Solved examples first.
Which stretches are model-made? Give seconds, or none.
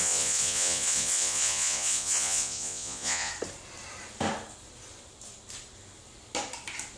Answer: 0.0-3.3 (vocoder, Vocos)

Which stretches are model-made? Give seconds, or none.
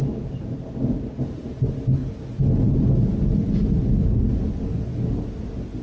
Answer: none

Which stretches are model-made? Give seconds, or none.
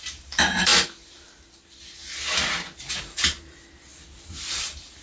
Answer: 0.0-0.7 (vocoder, BigVGAN v2); 2.9-3.9; 4.5-5.0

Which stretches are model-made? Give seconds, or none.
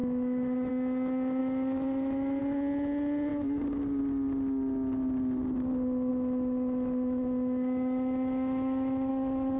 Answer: 0.0-0.7 (autoencoder, DAC-VAE); 1.4-2.4; 6.1-9.1